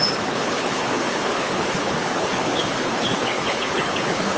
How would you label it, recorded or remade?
remade